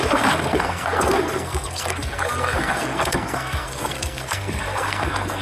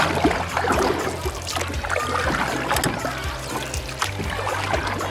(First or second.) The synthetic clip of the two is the first